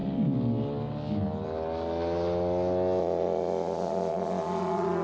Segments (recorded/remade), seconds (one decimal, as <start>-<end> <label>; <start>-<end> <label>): 0.0-3.0 recorded; 3.0-5.0 remade